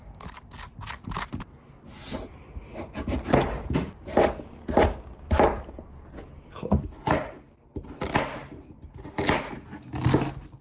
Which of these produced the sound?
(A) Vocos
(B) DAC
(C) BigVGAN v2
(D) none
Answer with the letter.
D